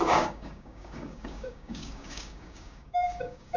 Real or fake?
fake